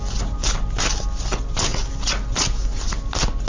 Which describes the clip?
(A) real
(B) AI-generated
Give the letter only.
A